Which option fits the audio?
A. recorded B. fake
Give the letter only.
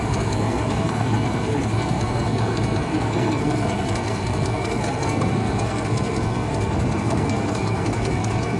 B